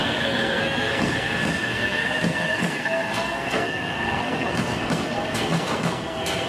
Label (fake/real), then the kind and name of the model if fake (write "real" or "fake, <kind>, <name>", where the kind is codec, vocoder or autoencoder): fake, codec, SNAC